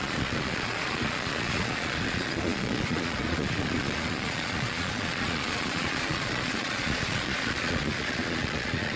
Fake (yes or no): yes